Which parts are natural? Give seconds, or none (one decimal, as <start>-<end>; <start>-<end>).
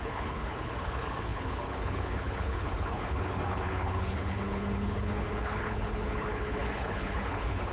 none